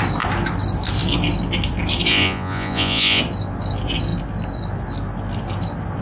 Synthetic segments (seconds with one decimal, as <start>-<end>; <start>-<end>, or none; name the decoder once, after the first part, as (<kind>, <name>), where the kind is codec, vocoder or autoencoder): 2.1-3.2 (vocoder, Vocos)